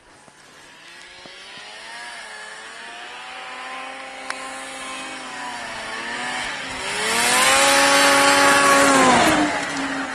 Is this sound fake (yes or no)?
no